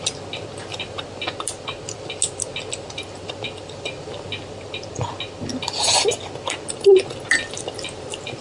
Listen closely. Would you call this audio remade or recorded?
recorded